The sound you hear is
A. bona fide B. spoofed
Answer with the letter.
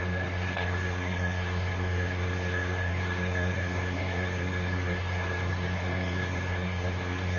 B